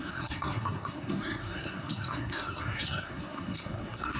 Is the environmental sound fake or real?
fake